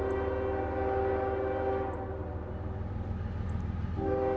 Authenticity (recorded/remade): recorded